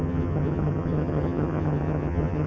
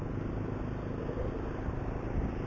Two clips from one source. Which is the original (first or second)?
second